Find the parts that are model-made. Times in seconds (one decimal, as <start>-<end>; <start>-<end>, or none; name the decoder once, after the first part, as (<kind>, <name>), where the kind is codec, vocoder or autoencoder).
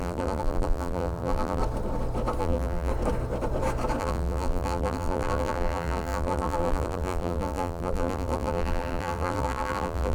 0.0-1.6 (vocoder, BigVGAN v2); 2.4-2.9; 4.0-10.1